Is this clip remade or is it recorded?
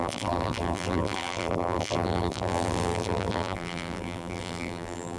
remade